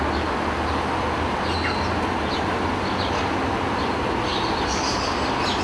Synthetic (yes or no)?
no